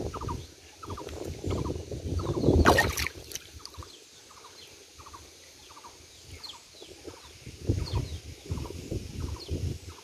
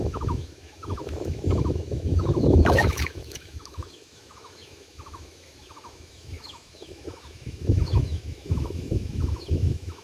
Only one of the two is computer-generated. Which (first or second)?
second